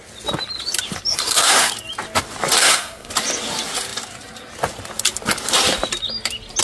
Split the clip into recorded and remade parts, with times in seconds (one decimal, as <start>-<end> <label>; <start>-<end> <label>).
0.0-1.1 recorded; 1.1-1.7 remade; 1.7-2.6 recorded; 2.6-3.1 remade; 3.1-6.6 recorded

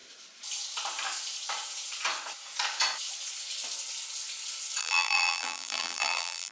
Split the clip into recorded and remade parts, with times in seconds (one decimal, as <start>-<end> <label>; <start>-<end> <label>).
0.0-4.8 recorded; 4.8-6.5 remade

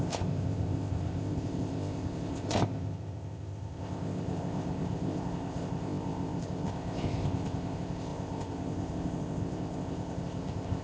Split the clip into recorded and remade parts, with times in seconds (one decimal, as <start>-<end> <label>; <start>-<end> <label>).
0.0-10.8 remade

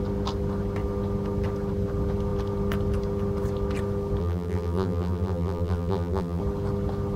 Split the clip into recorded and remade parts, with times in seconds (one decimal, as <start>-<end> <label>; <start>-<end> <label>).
0.0-4.2 recorded; 4.2-6.4 remade; 6.4-7.2 recorded